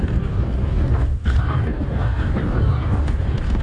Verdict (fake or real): fake